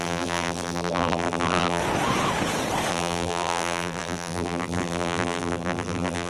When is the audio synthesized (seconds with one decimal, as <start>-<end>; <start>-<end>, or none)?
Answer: 0.0-1.8; 2.9-6.3